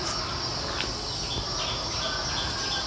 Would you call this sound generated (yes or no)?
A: no